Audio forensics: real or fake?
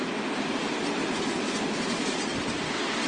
real